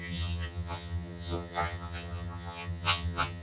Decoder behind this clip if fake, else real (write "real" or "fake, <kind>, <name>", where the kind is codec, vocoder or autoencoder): fake, vocoder, HiFi-GAN